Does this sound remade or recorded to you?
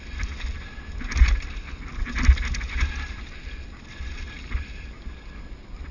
recorded